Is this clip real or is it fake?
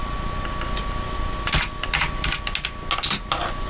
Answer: real